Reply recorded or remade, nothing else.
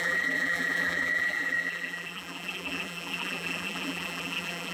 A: remade